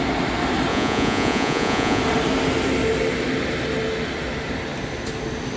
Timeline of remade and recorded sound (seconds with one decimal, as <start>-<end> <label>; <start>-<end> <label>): 0.0-0.7 recorded; 0.7-2.0 remade; 2.0-5.6 recorded